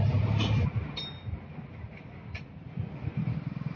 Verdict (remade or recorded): recorded